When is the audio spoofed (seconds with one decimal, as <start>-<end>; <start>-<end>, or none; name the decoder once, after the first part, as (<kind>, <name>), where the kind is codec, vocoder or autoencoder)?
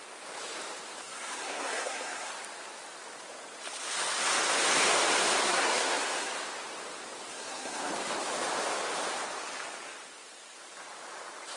1.0-2.3 (codec, SNAC); 5.4-6.3; 7.3-7.9